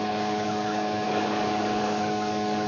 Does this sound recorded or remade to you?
remade